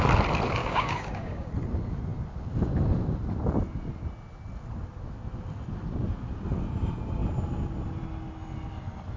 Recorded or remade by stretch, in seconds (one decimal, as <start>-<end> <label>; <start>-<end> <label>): 0.0-0.6 recorded; 0.6-1.5 remade; 1.5-9.2 recorded